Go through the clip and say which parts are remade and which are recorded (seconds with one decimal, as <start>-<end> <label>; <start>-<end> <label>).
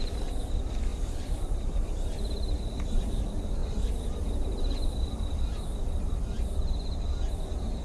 0.0-0.9 recorded; 0.9-3.2 remade; 3.2-3.6 recorded; 3.6-5.4 remade; 5.4-7.8 recorded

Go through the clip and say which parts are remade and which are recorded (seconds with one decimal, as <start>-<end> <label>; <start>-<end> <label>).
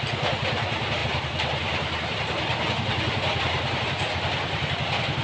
0.0-1.0 recorded; 1.0-4.1 remade; 4.1-5.2 recorded